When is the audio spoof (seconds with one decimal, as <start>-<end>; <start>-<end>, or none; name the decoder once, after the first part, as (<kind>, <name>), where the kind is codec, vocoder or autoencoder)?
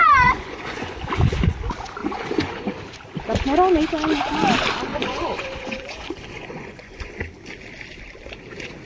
0.0-1.0 (vocoder, Vocos); 2.0-2.7; 4.9-7.1